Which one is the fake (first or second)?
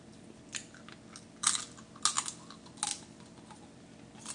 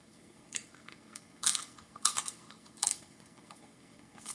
second